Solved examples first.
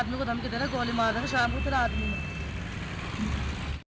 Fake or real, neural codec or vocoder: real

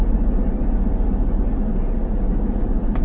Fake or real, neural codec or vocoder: real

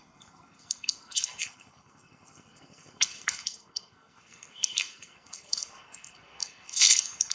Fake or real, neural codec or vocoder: fake, codec, SNAC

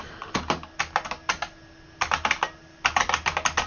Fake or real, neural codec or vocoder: real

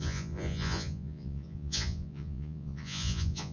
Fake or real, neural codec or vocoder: fake, vocoder, Vocos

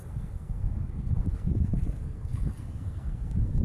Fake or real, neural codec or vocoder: fake, codec, SNAC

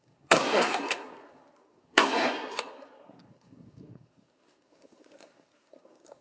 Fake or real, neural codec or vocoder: fake, codec, SNAC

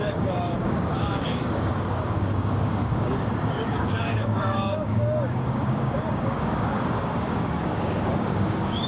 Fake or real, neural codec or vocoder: fake, codec, DAC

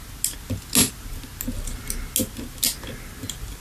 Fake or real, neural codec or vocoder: real